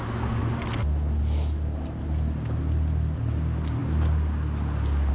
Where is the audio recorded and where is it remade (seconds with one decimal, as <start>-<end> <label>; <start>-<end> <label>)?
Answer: 0.0-5.1 recorded